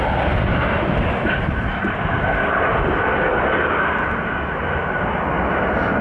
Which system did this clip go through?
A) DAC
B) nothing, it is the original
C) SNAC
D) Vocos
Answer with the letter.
B